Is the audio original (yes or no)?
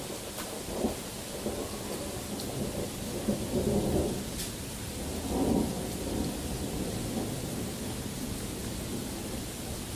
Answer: yes